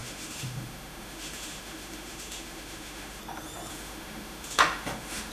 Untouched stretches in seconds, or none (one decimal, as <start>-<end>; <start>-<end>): 3.2-3.7